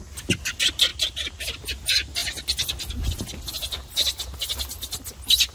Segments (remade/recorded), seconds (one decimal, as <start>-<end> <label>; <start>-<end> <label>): 0.0-5.5 recorded